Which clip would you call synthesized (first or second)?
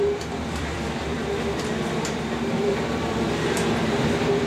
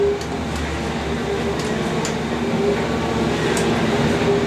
first